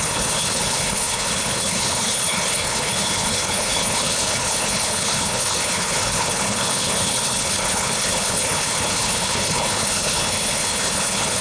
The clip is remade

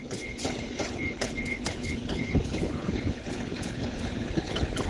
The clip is remade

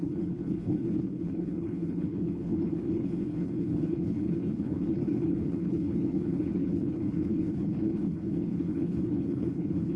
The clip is remade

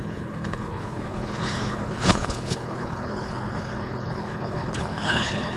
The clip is remade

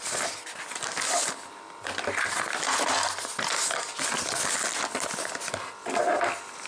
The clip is recorded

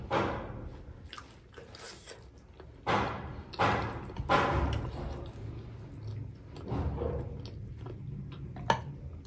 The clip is recorded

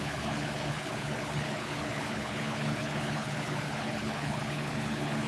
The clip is remade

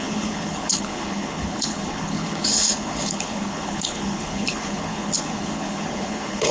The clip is remade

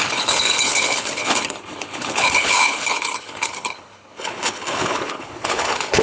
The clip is remade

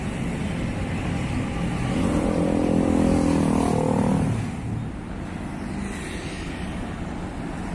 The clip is recorded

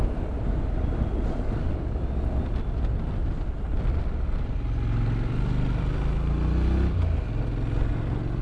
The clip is recorded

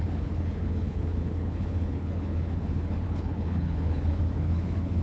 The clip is remade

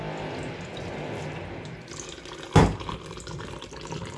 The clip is recorded